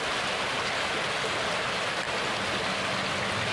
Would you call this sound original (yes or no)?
yes